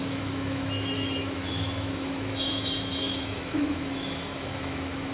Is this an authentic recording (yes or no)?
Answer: no